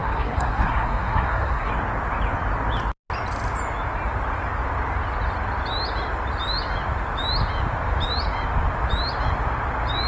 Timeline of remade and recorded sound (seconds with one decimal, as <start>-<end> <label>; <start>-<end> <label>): 0.0-1.7 remade; 1.7-10.1 recorded